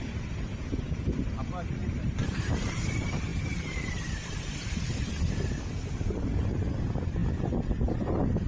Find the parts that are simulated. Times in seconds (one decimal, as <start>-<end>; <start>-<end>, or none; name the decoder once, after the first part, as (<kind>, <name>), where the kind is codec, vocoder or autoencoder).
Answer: 1.8-2.7 (vocoder, BigVGAN v2); 3.3-4.9